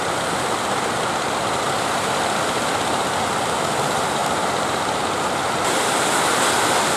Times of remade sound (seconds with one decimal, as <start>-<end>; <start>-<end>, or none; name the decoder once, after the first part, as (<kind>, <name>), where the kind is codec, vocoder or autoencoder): 4.2-5.0 (vocoder, BigVGAN v2)